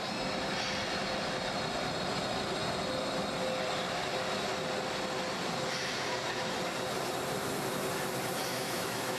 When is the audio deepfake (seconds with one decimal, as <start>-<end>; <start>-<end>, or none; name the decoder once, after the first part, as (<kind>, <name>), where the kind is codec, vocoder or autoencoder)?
8.5-9.2 (autoencoder, DAC-VAE)